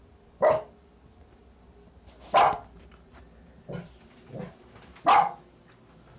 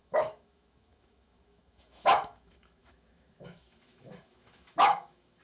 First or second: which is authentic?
first